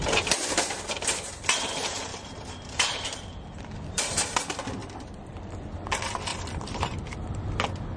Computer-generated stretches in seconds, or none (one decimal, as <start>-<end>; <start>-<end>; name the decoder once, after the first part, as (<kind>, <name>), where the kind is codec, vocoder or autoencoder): 2.1-4.0 (vocoder, BigVGAN v2); 4.8-5.3; 6.3-7.1